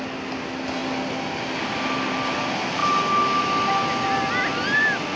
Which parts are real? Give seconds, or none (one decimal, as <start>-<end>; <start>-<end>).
0.0-5.2